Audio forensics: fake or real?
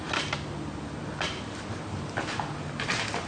real